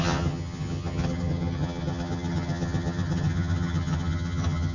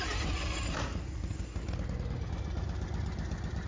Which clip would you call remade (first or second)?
first